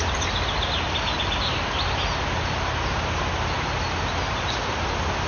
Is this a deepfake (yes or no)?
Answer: no